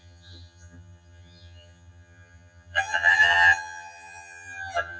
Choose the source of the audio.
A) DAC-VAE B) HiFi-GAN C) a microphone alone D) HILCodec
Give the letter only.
B